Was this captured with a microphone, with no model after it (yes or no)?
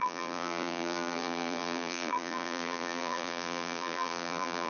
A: no